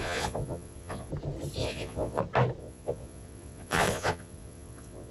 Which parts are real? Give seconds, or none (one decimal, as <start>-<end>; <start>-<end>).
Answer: 1.1-1.6; 2.2-2.6